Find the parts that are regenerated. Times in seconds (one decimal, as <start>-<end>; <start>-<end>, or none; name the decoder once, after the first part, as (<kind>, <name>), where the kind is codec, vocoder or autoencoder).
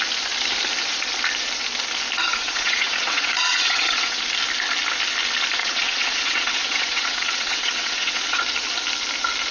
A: 2.3-4.2 (vocoder, WaveNeXt); 5.6-8.4